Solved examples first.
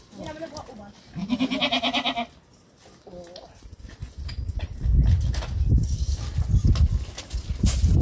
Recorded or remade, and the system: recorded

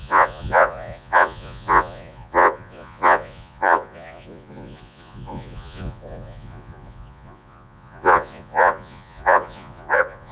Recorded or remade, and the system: remade, vocoder, Vocos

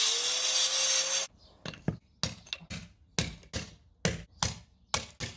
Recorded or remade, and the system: recorded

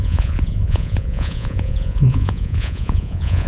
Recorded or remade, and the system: remade, vocoder, Vocos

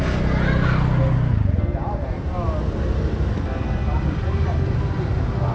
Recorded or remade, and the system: recorded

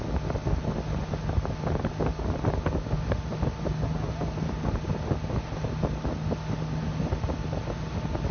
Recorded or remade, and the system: recorded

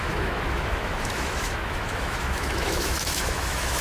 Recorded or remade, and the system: remade, autoencoder, DAC-VAE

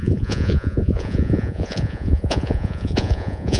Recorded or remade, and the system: remade, vocoder, Vocos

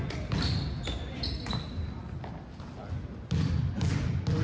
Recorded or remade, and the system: recorded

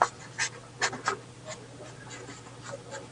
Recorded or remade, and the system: recorded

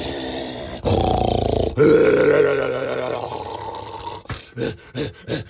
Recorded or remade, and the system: remade, vocoder, BigVGAN v2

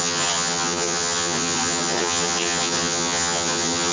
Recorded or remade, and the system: remade, vocoder, HiFi-GAN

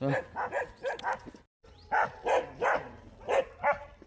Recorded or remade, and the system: recorded